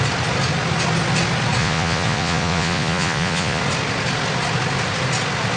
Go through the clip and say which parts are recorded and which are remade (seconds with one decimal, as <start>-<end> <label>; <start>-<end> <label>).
0.0-1.6 recorded; 1.6-3.6 remade; 3.6-5.6 recorded